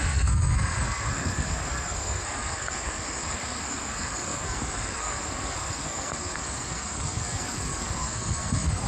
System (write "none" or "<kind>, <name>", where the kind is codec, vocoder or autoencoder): codec, SNAC